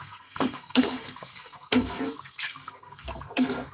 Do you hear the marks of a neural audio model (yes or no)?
yes